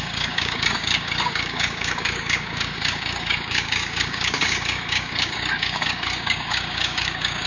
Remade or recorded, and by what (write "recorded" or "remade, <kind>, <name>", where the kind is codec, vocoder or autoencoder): remade, codec, DAC